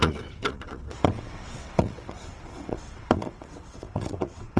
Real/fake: fake